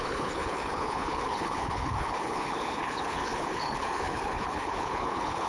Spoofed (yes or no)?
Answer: yes